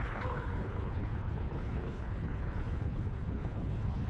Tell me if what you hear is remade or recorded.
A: remade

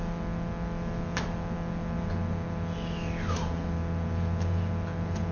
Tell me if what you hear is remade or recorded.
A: recorded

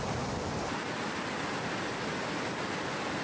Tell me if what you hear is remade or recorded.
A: recorded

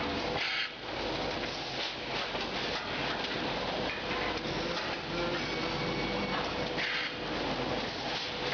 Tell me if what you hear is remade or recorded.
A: recorded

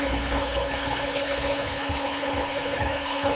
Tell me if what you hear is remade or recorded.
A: remade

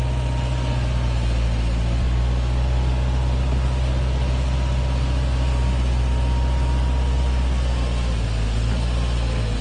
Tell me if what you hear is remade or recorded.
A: recorded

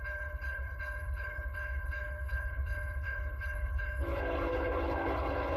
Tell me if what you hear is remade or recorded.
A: remade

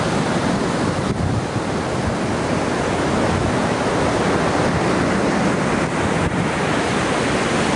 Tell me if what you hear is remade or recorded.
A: recorded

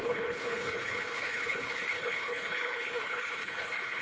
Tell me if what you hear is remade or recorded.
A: remade